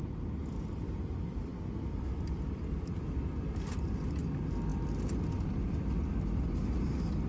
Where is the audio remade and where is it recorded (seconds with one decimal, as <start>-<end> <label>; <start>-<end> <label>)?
0.0-7.3 recorded